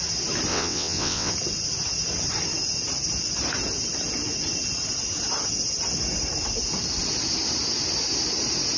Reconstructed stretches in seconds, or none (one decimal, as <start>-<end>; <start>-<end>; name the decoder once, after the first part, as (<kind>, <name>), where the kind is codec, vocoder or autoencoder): 0.5-1.3 (vocoder, WaveNeXt)